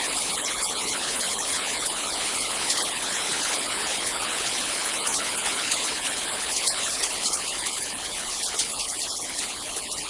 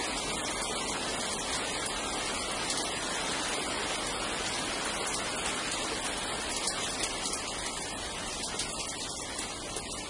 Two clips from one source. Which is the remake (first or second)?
first